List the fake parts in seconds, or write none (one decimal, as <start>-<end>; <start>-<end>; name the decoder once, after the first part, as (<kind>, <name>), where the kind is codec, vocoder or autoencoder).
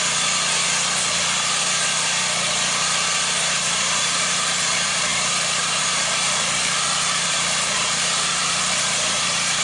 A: 3.4-9.6 (vocoder, BigVGAN v2)